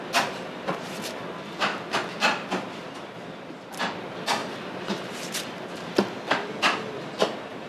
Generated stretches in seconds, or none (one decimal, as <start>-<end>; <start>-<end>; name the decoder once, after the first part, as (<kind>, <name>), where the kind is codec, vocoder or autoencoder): 4.4-5.5 (vocoder, BigVGAN v2)